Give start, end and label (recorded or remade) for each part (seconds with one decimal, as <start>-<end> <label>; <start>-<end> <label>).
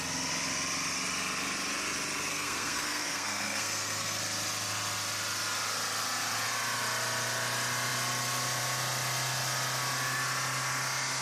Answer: 0.0-2.3 recorded; 2.3-4.2 remade; 4.2-11.2 recorded